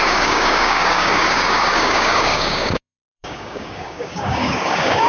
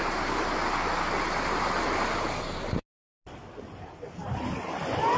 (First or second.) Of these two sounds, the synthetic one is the first